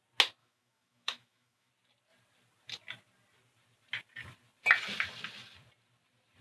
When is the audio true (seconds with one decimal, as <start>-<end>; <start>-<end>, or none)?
0.0-0.4; 1.7-6.4